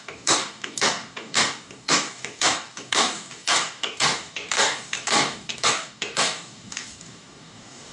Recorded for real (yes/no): no